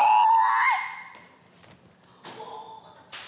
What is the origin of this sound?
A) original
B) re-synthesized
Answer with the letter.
A